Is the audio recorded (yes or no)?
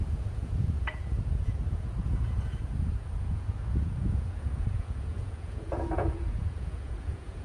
no